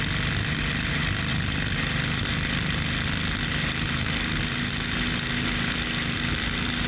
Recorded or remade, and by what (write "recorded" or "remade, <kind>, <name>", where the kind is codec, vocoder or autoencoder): recorded